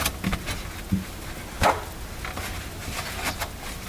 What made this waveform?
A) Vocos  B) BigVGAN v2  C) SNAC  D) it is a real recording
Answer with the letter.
D